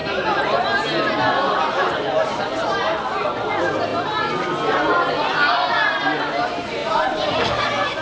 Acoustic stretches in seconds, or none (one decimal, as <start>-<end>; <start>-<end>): 0.0-1.3; 3.9-5.3; 6.8-7.6